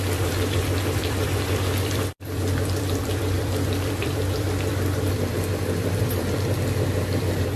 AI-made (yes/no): yes